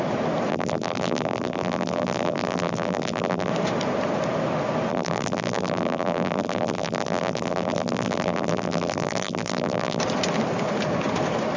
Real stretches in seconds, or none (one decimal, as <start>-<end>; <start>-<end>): 0.0-0.5; 3.5-4.9; 10.0-11.6